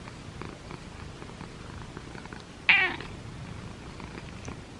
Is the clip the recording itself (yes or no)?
yes